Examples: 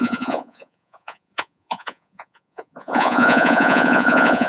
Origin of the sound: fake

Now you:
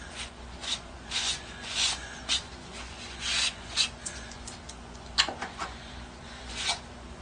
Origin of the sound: fake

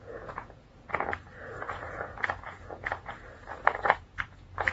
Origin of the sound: fake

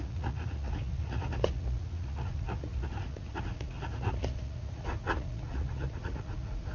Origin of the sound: fake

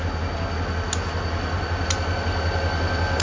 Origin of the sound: real